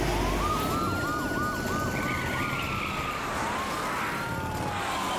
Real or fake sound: real